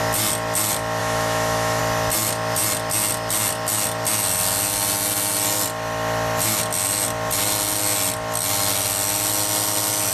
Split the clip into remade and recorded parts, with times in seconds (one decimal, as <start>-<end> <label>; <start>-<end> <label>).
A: 0.0-1.0 recorded; 1.0-1.8 remade; 1.8-10.1 recorded